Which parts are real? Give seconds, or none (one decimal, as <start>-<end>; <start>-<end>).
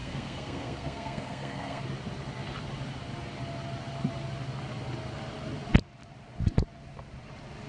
1.8-7.7